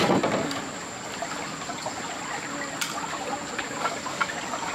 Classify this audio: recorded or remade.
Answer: recorded